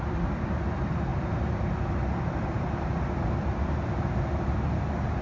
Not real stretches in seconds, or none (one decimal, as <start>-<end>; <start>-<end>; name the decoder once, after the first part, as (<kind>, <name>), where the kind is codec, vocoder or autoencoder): none